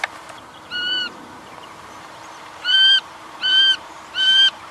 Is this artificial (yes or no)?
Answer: yes